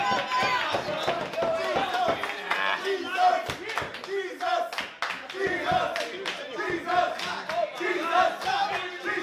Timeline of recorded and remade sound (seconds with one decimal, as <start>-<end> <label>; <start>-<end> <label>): 0.0-3.9 recorded; 3.9-4.4 remade; 4.4-9.2 recorded